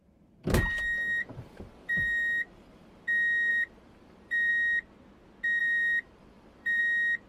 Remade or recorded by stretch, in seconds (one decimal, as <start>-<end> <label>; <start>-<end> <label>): 0.0-1.2 recorded; 1.2-3.0 remade; 3.0-3.5 recorded; 3.5-4.5 remade; 4.5-5.6 recorded; 5.6-6.8 remade; 6.8-7.3 recorded